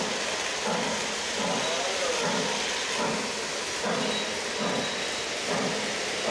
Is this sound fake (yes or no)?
no